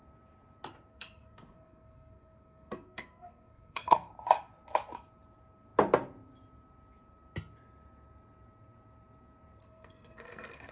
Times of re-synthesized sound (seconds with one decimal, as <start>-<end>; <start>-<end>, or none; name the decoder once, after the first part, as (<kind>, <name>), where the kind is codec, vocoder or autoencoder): 0.9-4.1 (codec, SNAC); 9.6-10.7